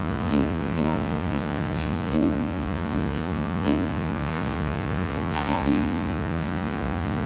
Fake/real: fake